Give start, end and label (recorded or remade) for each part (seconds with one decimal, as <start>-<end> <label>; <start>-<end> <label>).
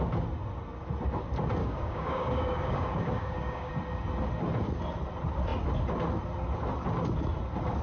0.0-1.6 recorded; 1.6-3.7 remade; 3.7-7.8 recorded